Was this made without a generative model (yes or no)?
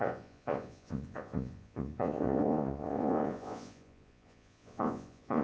no